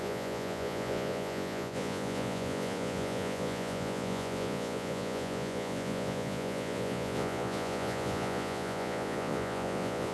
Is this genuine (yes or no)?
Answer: no